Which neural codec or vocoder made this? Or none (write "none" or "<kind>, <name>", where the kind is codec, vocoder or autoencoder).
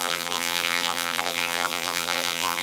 vocoder, BigVGAN v2